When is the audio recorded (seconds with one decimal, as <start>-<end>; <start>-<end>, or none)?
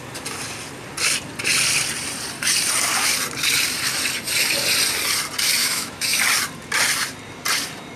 0.0-5.6; 6.2-8.0